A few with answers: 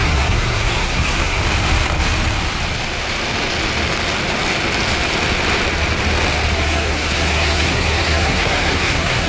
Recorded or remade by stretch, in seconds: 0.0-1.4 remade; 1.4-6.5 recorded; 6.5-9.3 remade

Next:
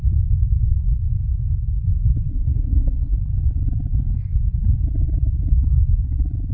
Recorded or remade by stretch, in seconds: 0.0-2.3 recorded; 2.3-3.2 remade; 3.2-6.5 recorded

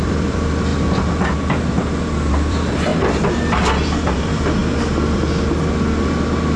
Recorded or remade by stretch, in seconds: 0.0-0.7 remade; 0.7-2.3 recorded; 2.3-2.9 remade; 2.9-4.1 recorded; 4.1-4.6 remade; 4.6-6.6 recorded

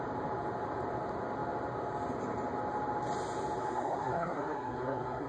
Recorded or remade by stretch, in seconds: 0.0-3.6 recorded; 3.6-5.3 remade

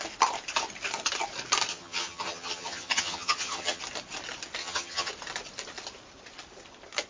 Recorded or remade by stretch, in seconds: 0.0-1.7 recorded; 1.7-3.8 remade; 3.8-4.6 recorded; 4.6-5.1 remade; 5.1-7.1 recorded